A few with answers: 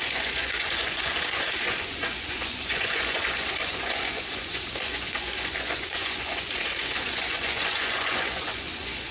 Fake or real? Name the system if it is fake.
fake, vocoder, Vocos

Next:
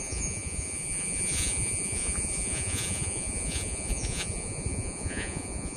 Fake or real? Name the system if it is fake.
fake, vocoder, Vocos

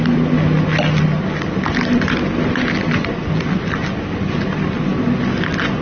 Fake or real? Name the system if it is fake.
real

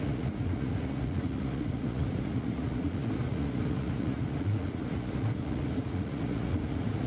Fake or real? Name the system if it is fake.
fake, vocoder, Vocos